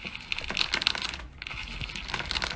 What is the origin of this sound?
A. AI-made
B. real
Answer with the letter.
B